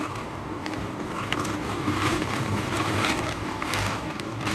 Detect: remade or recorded remade